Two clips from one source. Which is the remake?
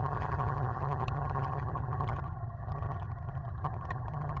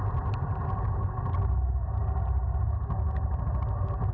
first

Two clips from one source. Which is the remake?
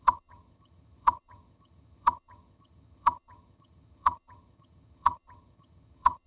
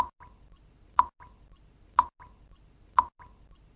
first